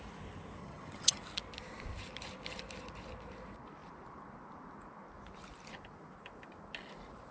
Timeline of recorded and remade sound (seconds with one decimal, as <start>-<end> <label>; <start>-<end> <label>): 0.0-0.6 recorded; 0.6-1.2 remade; 1.2-7.3 recorded